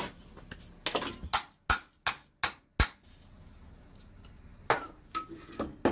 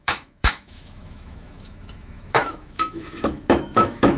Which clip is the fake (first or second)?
second